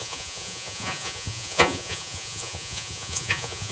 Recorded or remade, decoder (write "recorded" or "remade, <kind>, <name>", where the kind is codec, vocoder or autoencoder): remade, vocoder, Vocos